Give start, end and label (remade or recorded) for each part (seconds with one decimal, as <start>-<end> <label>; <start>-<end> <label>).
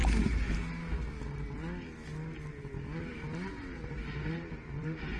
0.0-3.1 recorded; 3.1-5.2 remade